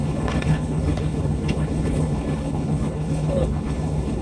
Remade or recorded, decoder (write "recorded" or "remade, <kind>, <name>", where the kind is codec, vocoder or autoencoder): remade, codec, HILCodec